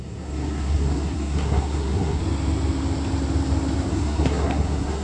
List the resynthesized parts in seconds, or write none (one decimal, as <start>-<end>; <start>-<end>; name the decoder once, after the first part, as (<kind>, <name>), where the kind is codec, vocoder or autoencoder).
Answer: 0.0-2.2 (codec, SNAC); 3.9-5.0

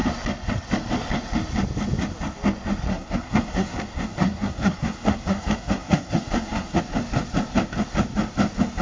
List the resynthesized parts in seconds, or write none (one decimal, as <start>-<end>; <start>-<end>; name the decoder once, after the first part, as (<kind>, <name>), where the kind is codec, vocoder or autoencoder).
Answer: 2.9-6.8 (codec, SNAC)